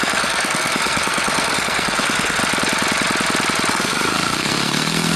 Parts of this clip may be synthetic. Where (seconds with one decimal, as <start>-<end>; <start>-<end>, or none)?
0.0-2.4; 3.7-5.2